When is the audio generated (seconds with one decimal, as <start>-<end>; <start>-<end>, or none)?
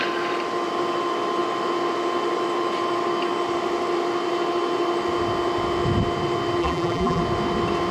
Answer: 6.6-7.2